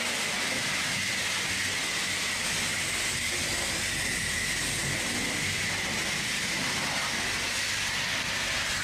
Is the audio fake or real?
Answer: real